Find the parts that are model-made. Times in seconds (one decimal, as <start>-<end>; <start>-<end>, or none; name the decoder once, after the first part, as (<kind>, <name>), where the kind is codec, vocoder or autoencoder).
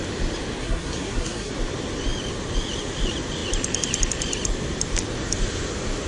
0.6-1.5 (codec, SNAC)